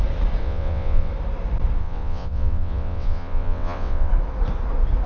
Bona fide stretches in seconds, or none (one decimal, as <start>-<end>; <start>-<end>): 0.0-0.4; 1.1-1.8; 4.1-5.1